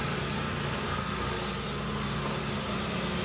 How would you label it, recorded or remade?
recorded